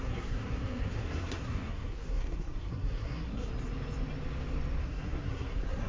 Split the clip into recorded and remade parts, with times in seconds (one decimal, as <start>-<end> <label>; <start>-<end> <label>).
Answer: 0.0-3.5 remade; 3.5-4.8 recorded; 4.8-5.9 remade